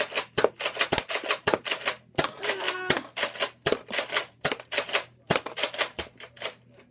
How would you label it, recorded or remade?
recorded